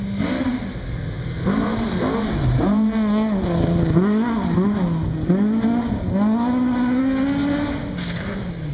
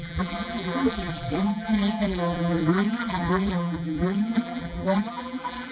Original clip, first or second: first